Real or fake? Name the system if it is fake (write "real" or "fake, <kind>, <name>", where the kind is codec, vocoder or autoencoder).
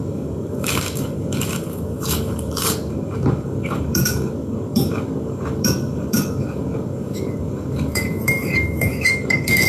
fake, codec, DAC